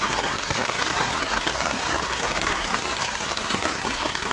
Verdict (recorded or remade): remade